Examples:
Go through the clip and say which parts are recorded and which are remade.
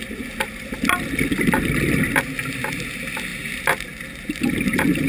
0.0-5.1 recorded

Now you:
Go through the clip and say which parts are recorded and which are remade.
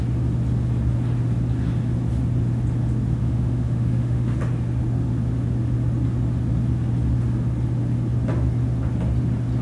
0.0-3.2 recorded; 3.2-4.4 remade; 4.4-9.6 recorded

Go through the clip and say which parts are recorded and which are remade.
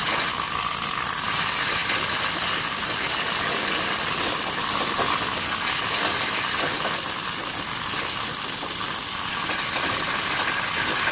0.0-11.1 recorded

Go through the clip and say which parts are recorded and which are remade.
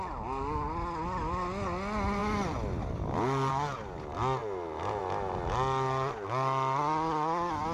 0.0-7.7 recorded